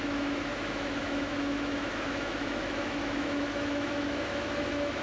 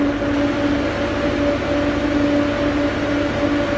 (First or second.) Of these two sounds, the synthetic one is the first